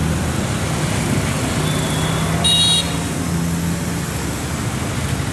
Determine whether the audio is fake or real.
real